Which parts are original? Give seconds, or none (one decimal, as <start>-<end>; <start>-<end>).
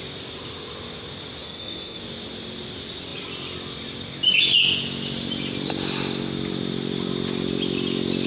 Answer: 0.0-1.4; 2.0-8.3